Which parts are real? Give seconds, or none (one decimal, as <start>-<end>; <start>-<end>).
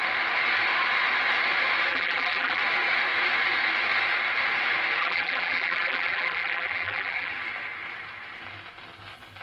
0.0-1.9; 2.6-5.0; 7.3-9.4